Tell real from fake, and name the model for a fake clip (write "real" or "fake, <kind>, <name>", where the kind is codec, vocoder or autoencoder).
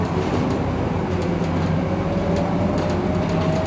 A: real